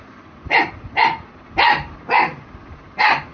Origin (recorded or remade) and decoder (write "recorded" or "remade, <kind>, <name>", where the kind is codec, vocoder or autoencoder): recorded